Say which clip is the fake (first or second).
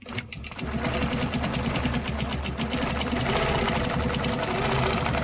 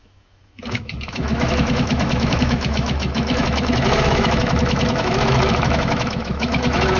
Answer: second